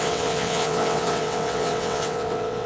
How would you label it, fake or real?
fake